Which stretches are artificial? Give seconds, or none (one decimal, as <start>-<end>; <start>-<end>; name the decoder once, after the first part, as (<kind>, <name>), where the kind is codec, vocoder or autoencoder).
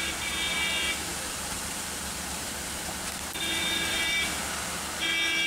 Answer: 1.1-4.4 (vocoder, BigVGAN v2)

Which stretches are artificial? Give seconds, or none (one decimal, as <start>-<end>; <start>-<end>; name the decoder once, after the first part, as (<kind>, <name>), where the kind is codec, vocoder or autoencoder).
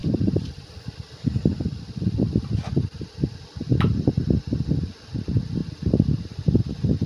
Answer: 0.0-0.7 (vocoder, BigVGAN v2)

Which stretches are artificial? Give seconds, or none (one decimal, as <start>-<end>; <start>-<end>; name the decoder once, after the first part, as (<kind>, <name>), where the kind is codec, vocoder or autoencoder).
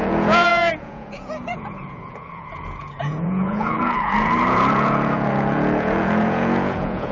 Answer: 0.0-7.1 (vocoder, Vocos)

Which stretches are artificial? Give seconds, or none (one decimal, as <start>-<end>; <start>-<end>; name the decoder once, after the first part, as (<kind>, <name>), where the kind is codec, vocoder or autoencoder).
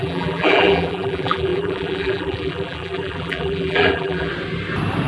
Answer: 0.0-4.3 (vocoder, BigVGAN v2)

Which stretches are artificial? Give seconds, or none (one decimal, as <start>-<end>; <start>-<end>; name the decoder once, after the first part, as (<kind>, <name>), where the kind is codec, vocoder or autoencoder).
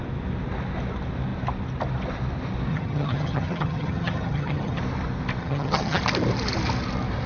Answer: 2.7-4.8 (vocoder, HiFi-GAN); 5.4-6.0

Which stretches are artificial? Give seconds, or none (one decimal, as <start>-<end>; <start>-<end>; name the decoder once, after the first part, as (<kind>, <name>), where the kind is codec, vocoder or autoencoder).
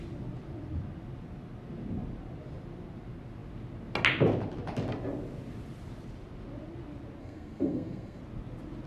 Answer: 7.2-8.2 (codec, SNAC)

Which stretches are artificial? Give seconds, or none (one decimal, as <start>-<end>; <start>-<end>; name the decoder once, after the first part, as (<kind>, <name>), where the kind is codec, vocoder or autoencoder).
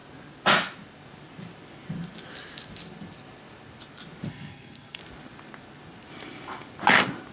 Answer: 4.3-5.0 (codec, SNAC)